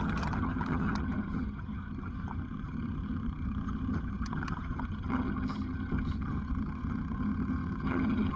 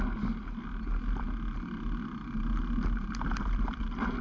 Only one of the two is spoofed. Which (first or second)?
first